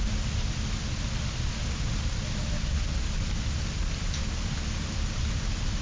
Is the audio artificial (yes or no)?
no